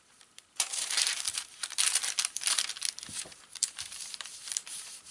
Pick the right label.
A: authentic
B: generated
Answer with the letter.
B